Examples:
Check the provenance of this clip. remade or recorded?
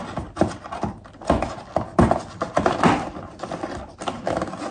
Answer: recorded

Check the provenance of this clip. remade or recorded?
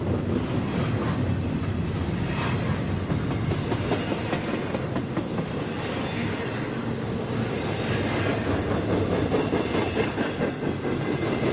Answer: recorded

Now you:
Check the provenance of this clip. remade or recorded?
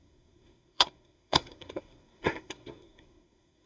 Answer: remade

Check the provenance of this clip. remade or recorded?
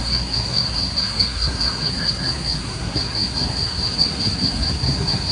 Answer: remade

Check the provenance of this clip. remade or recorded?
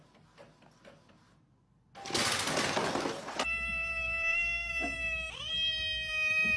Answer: recorded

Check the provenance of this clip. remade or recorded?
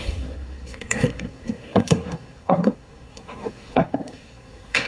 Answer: remade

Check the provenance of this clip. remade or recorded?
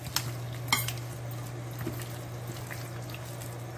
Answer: recorded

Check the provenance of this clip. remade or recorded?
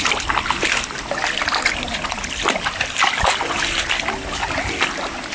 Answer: recorded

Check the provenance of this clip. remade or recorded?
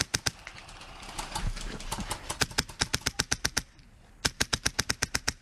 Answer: recorded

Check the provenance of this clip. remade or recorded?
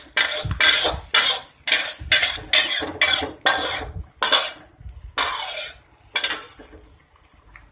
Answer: recorded